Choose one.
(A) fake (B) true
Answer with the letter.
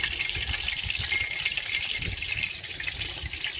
B